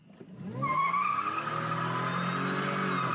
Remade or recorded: recorded